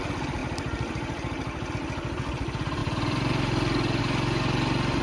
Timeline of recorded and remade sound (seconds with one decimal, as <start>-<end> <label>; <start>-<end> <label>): 0.0-0.4 recorded; 0.4-1.7 remade; 1.7-2.8 recorded; 2.8-4.0 remade; 4.0-5.0 recorded